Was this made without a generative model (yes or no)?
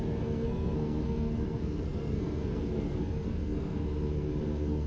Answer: no